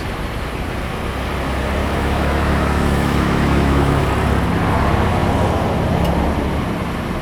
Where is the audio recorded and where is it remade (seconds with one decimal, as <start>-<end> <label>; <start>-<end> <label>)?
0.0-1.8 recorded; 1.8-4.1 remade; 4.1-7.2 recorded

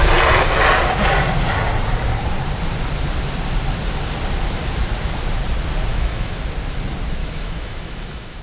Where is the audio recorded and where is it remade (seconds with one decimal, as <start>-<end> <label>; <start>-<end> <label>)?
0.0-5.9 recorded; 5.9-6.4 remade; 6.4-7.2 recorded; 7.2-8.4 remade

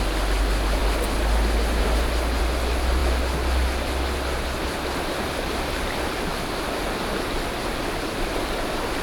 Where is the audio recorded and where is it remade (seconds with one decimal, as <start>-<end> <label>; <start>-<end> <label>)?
0.0-9.0 recorded